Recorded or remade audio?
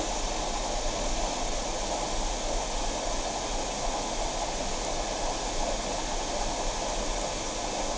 recorded